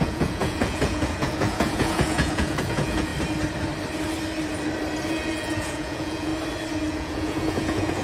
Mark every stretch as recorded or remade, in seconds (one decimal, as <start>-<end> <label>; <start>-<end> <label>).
0.0-3.1 remade; 3.1-5.1 recorded; 5.1-6.3 remade; 6.3-6.9 recorded; 6.9-8.0 remade